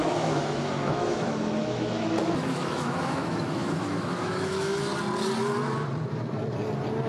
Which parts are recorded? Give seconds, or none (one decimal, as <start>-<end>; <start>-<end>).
4.9-7.1